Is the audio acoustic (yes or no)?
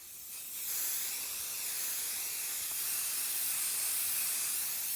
no